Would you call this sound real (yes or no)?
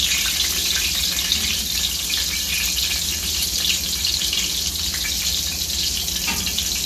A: yes